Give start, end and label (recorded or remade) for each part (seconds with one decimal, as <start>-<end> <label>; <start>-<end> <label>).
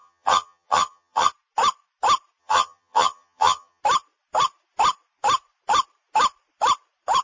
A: 0.0-1.3 remade; 1.3-2.4 recorded; 2.4-3.8 remade; 3.8-7.2 recorded